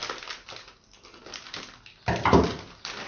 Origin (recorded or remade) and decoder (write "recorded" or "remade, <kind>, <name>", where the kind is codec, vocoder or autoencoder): recorded